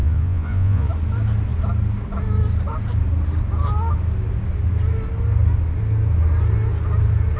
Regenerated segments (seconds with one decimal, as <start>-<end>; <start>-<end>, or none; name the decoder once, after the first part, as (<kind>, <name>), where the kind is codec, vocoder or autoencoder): 0.0-0.9 (vocoder, Vocos)